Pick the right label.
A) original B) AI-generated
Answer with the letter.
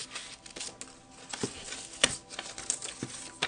A